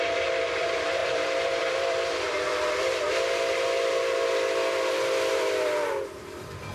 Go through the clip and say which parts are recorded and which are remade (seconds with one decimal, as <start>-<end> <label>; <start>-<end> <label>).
0.0-2.5 remade; 2.5-5.3 recorded; 5.3-6.7 remade